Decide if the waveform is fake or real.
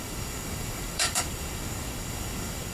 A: fake